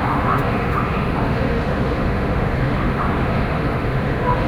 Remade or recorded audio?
remade